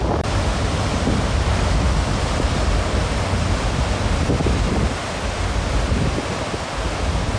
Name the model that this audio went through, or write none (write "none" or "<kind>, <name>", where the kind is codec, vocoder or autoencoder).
vocoder, BigVGAN v2